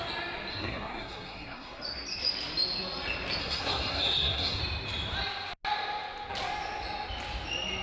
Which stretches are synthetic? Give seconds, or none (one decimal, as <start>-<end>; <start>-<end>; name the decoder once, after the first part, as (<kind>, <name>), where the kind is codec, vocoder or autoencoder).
0.5-1.8 (codec, SNAC); 3.4-4.6